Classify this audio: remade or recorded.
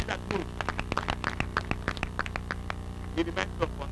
recorded